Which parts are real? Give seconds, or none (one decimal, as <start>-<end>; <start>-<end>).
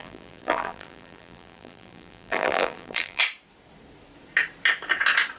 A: 3.2-5.4